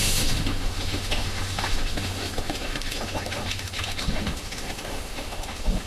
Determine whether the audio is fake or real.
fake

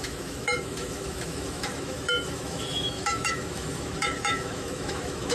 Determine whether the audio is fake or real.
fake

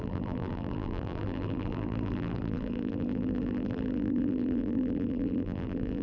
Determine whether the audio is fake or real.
fake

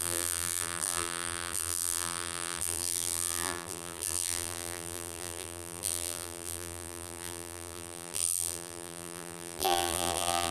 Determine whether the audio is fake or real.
fake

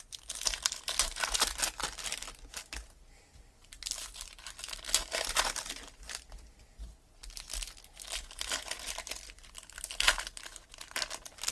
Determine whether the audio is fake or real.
real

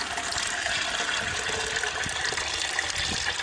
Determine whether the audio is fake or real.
real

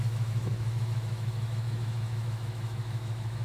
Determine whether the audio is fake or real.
fake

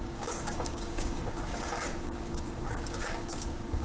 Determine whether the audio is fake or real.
fake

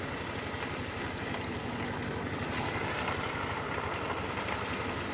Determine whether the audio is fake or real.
real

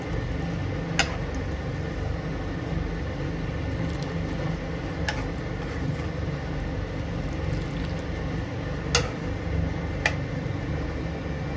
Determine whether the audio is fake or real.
real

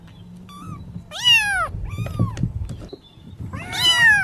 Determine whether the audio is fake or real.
real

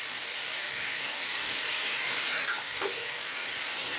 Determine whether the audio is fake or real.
fake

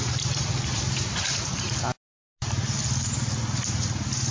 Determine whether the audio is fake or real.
real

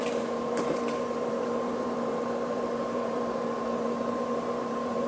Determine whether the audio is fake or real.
fake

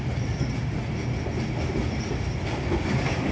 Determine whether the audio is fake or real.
real